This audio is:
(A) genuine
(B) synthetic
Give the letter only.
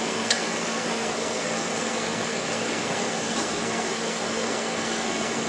B